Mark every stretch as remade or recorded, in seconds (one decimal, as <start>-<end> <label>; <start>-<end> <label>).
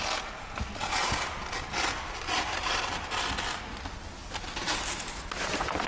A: 0.0-5.9 recorded